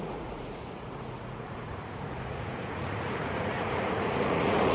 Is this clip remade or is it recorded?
remade